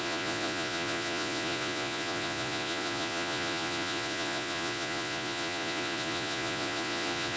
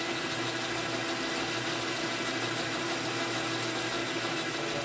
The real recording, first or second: second